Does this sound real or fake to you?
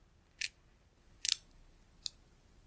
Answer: real